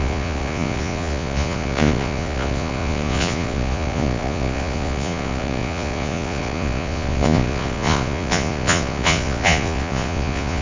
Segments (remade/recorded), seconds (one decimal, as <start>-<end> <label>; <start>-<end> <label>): 0.0-10.6 remade